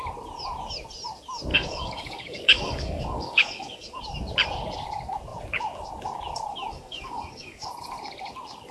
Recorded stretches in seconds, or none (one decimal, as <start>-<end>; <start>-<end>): 0.0-1.5; 4.0-6.7; 7.7-8.7